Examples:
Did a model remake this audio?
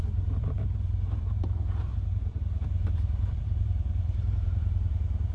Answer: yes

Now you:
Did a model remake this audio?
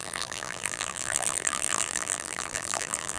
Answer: yes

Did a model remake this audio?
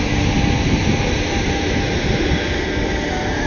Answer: no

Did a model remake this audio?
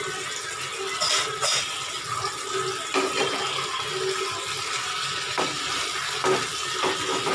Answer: no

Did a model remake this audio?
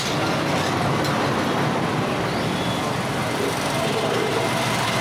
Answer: no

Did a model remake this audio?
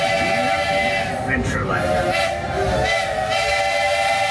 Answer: no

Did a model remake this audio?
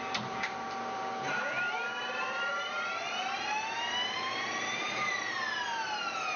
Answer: yes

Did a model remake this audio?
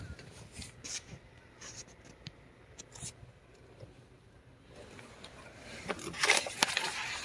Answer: yes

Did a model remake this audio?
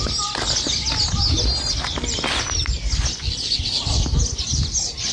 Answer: no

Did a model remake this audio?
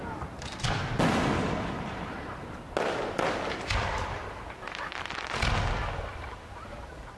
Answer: no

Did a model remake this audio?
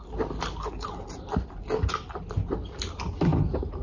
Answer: no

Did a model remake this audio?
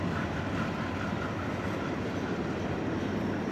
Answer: no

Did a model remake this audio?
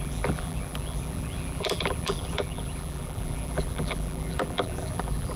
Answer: yes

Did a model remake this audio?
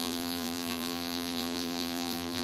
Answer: yes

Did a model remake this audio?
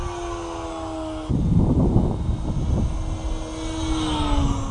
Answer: no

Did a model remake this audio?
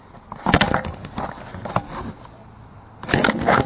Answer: no